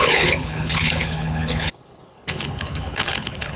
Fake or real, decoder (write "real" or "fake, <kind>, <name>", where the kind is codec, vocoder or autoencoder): fake, codec, HILCodec